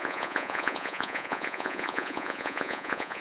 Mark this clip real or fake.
fake